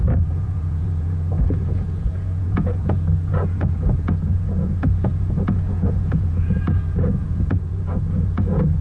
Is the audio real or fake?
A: fake